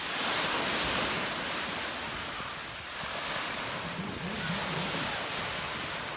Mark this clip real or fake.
real